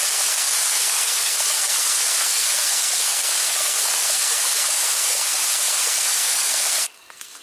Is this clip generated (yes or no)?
yes